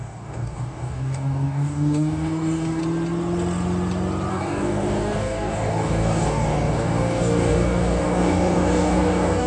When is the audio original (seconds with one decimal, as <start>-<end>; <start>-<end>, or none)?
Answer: 2.8-4.3